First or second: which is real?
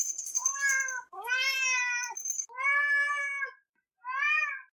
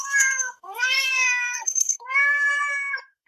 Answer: first